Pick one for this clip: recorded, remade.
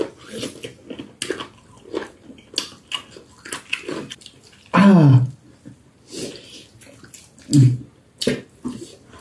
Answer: recorded